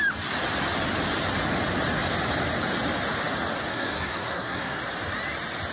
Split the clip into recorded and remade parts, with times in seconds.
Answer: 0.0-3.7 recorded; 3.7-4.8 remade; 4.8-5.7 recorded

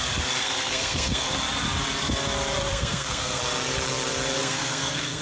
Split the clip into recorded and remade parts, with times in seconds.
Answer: 0.0-0.4 recorded; 0.4-1.3 remade; 1.3-2.6 recorded; 2.6-3.4 remade; 3.4-4.4 recorded; 4.4-5.2 remade

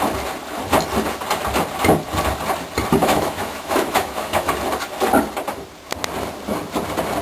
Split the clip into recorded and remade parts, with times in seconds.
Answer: 0.0-3.0 recorded; 3.0-4.5 remade; 4.5-7.2 recorded

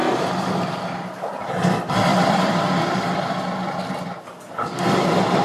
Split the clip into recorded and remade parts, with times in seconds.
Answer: 0.0-0.5 remade; 0.5-2.1 recorded; 2.1-3.4 remade; 3.4-5.4 recorded

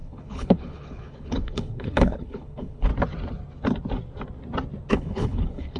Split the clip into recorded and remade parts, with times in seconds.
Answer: 0.0-2.9 remade; 2.9-4.9 recorded; 4.9-5.8 remade

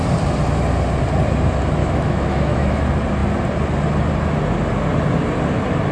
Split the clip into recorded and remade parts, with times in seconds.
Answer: 0.0-1.8 recorded; 1.8-2.8 remade; 2.8-5.9 recorded